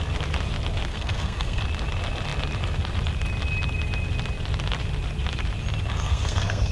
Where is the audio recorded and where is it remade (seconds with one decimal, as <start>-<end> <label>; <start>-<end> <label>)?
0.0-0.9 recorded; 0.9-1.6 remade; 1.6-5.9 recorded; 5.9-6.7 remade